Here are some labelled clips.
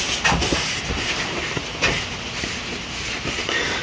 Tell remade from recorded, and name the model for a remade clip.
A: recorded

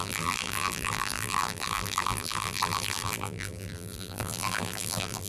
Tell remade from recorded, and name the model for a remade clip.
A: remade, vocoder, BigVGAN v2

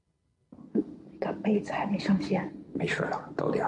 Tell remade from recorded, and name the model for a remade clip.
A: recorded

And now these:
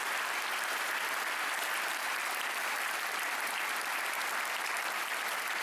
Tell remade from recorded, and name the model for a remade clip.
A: remade, vocoder, BigVGAN v2